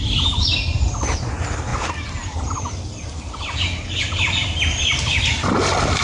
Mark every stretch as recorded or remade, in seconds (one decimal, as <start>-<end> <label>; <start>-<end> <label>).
0.0-6.0 remade